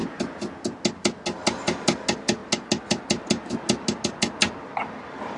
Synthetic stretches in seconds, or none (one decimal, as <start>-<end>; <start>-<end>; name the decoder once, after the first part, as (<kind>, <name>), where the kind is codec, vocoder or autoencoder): 4.7-5.4 (vocoder, BigVGAN v2)

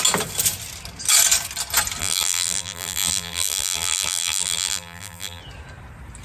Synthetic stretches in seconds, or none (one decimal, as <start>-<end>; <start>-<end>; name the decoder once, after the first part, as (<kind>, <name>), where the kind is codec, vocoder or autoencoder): 2.0-5.4 (vocoder, BigVGAN v2)

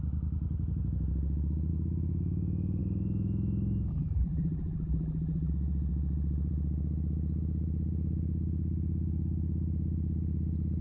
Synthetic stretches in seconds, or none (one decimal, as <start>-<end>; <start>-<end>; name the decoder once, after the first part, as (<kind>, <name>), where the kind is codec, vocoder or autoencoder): 3.9-5.5 (vocoder, BigVGAN v2)

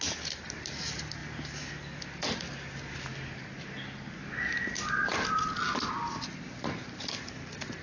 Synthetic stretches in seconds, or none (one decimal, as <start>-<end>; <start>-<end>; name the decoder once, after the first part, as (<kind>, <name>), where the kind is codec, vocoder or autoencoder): none

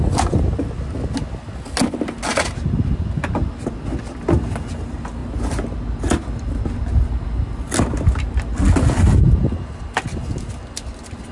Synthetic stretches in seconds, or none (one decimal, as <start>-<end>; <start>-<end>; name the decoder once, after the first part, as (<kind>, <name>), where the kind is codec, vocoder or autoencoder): none

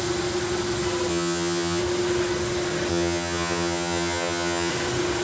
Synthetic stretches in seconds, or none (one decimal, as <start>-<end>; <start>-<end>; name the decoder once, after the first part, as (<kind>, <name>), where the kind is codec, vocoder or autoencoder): 1.1-1.8 (vocoder, HiFi-GAN); 2.9-4.7

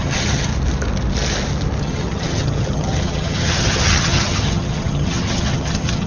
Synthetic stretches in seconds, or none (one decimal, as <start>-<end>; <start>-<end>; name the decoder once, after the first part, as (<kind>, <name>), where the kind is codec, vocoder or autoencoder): 0.0-0.5 (vocoder, HiFi-GAN); 1.8-6.1

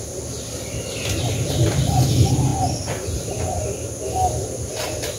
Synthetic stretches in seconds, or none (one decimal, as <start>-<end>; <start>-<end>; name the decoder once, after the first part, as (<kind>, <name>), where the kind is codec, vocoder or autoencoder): none